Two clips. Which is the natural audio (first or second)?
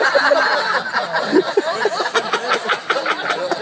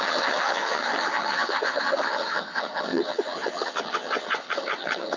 first